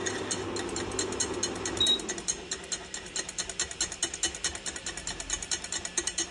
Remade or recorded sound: recorded